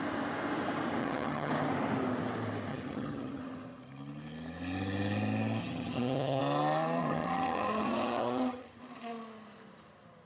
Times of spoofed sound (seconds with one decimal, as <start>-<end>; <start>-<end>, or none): 1.0-1.5; 2.7-3.4; 5.6-6.4; 7.0-8.8